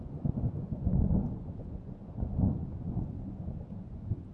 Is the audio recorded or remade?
remade